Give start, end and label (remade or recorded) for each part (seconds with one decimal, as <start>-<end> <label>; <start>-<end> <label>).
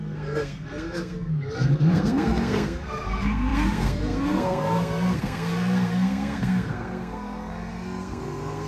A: 0.0-8.7 remade